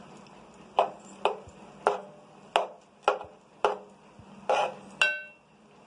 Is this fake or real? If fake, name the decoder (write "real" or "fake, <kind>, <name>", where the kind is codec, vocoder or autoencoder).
real